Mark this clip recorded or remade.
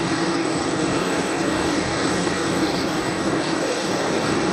remade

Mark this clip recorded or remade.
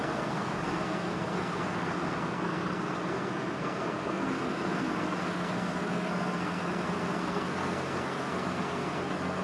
remade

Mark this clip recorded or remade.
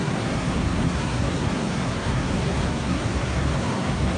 remade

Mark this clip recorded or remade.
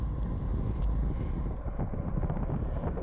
recorded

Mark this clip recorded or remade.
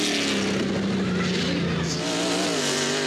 recorded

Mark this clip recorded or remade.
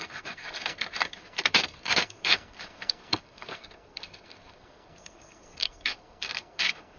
remade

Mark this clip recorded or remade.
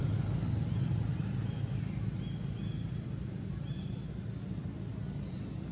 recorded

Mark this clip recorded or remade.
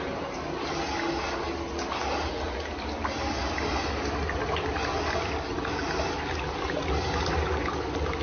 recorded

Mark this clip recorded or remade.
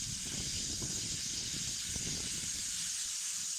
recorded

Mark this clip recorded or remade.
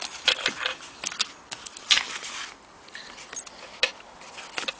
recorded